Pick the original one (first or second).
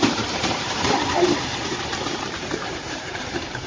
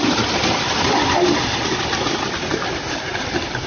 second